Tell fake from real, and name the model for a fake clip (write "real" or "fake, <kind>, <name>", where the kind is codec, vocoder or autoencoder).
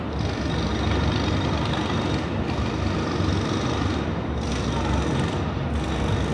real